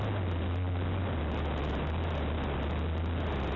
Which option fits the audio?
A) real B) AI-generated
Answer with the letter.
A